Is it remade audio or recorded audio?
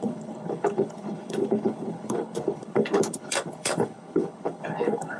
remade